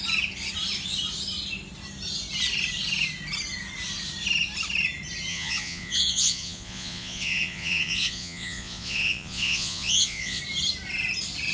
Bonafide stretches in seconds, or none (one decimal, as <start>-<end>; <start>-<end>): 0.0-5.3; 10.4-11.5